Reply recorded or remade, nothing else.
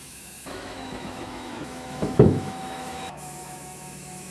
remade